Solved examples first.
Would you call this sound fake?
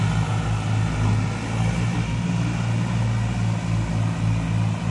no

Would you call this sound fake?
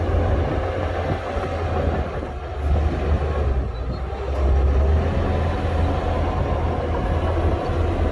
no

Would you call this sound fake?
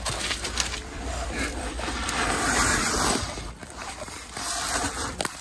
yes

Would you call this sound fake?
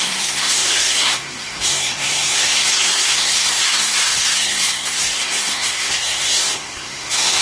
yes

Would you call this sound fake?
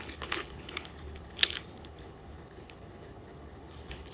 yes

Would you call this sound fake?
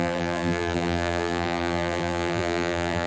yes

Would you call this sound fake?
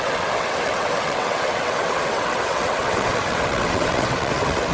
yes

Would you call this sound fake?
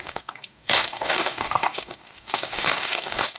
yes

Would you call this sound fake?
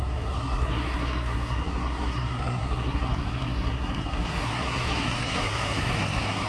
yes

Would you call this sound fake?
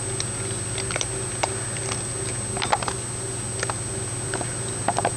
no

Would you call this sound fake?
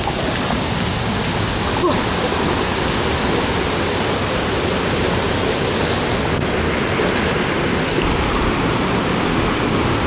no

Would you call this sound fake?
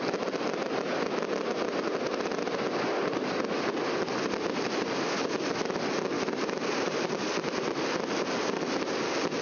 no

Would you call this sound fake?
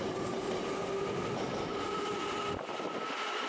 no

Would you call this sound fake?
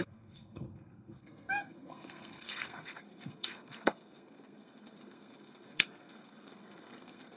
yes